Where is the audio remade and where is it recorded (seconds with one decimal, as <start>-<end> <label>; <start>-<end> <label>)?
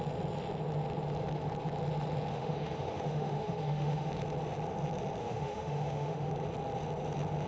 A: 0.0-2.3 recorded; 2.3-4.1 remade; 4.1-5.2 recorded; 5.2-6.3 remade; 6.3-7.5 recorded